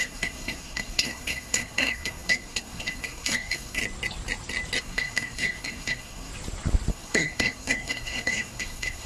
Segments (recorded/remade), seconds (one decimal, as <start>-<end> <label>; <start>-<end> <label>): 0.0-3.8 remade; 3.8-4.8 recorded; 4.8-6.3 remade; 6.3-6.9 recorded; 6.9-9.1 remade